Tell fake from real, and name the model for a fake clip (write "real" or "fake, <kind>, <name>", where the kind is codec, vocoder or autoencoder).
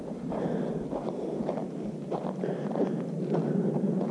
real